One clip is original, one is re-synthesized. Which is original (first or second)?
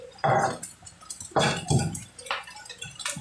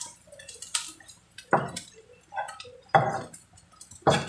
first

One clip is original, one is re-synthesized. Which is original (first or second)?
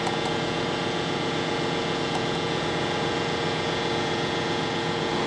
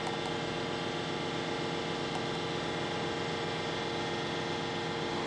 second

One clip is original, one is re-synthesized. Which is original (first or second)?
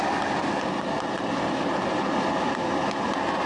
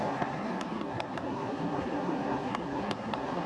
first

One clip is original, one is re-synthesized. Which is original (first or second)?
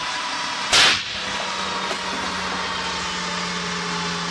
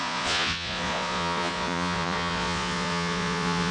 first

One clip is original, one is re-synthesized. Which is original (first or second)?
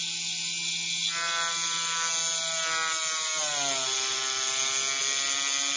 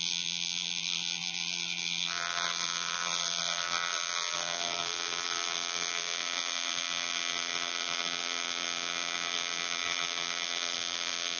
first